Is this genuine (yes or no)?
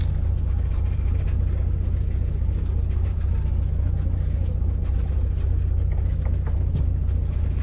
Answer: yes